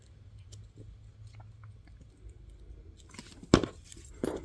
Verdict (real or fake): real